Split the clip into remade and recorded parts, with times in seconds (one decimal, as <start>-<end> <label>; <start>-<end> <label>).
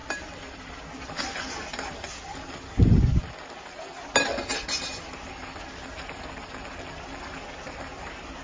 0.0-8.4 recorded